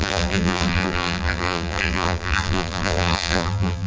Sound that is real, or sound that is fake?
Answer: fake